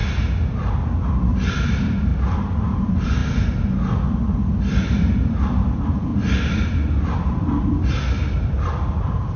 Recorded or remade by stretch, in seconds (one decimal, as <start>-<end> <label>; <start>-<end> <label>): 0.0-1.0 recorded; 1.0-2.1 remade; 2.1-2.6 recorded; 2.6-3.2 remade; 3.2-4.8 recorded; 4.8-6.1 remade; 6.1-8.7 recorded; 8.7-9.4 remade